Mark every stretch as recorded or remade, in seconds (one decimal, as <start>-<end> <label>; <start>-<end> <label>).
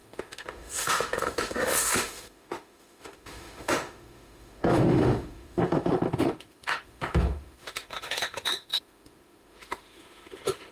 0.0-10.7 remade